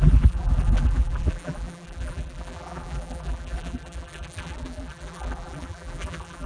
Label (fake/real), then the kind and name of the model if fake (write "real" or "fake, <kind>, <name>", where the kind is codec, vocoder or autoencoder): fake, vocoder, BigVGAN v2